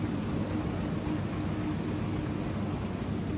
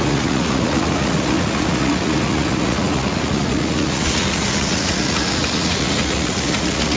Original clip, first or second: first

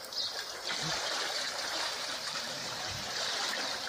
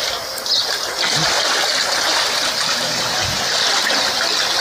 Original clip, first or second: second